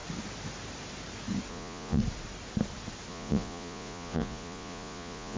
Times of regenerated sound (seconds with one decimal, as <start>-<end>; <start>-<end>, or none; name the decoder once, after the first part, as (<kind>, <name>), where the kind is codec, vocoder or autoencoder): 1.5-2.0 (vocoder, Vocos); 3.1-5.4